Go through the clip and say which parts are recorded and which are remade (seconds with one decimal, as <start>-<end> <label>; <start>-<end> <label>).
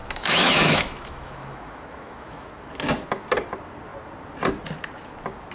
0.0-2.5 remade; 2.5-5.5 recorded